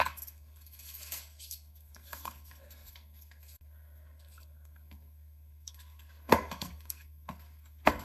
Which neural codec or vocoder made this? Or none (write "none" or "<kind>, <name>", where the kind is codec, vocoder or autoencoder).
codec, SNAC